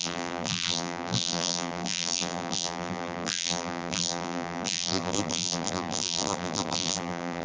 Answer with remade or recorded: remade